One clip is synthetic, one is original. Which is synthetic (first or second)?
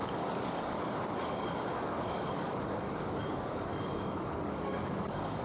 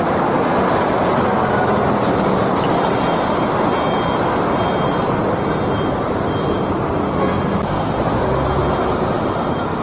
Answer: first